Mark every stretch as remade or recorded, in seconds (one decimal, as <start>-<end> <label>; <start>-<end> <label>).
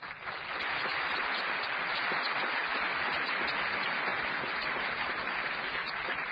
0.0-6.3 recorded